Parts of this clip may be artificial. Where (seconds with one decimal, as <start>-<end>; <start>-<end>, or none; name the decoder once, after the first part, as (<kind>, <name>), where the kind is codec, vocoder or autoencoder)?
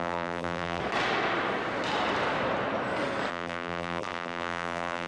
0.0-0.8 (vocoder, BigVGAN v2); 3.3-5.1